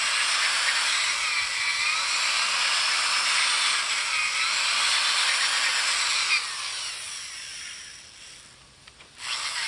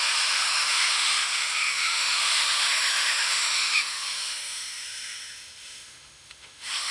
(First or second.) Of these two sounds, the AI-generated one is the second